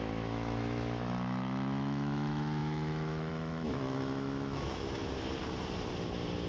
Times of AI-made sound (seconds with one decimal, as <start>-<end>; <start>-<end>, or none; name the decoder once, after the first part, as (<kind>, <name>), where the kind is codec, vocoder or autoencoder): 0.0-5.0 (autoencoder, DAC-VAE)